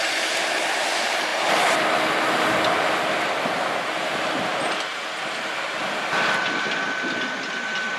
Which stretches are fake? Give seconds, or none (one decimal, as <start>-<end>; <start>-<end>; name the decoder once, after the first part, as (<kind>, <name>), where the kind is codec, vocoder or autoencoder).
none